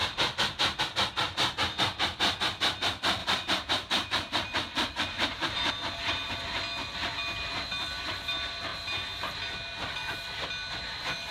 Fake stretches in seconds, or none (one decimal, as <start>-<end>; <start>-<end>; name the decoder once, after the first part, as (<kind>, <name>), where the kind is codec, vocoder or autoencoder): 0.0-0.8 (vocoder, BigVGAN v2); 3.2-5.7